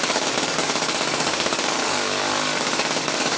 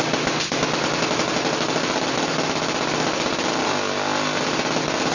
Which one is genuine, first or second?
second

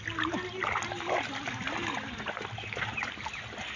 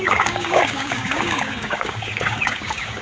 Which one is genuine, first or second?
first